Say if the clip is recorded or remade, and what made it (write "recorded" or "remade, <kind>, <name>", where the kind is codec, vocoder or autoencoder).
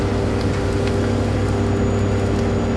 recorded